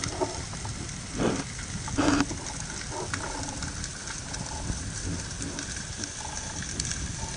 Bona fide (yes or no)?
yes